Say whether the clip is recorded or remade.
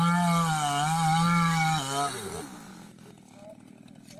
recorded